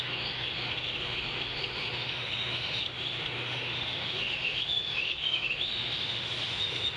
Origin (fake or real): fake